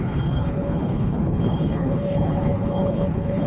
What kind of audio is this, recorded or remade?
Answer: remade